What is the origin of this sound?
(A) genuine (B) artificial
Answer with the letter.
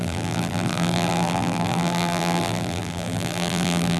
B